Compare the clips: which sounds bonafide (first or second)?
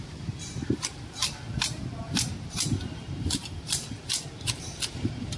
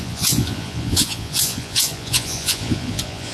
first